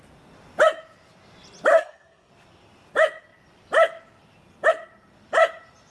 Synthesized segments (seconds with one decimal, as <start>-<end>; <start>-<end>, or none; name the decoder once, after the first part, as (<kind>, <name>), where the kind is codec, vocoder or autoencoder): 1.7-2.3 (codec, SNAC)